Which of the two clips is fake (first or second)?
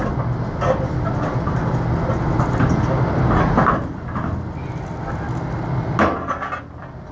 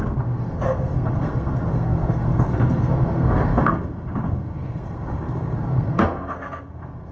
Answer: second